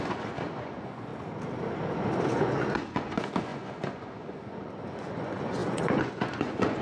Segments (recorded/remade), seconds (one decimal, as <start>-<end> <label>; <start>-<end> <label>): 0.0-1.1 remade; 1.1-2.2 recorded; 2.2-6.8 remade